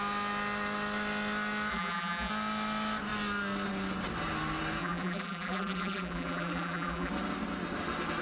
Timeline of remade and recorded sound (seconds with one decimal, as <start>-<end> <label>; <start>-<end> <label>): 0.0-1.7 recorded; 1.7-2.3 remade; 2.3-4.8 recorded; 4.8-7.1 remade; 7.1-8.2 recorded